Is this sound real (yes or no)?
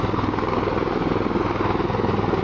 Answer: yes